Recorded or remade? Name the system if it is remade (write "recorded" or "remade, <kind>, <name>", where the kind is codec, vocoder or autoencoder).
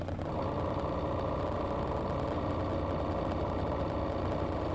recorded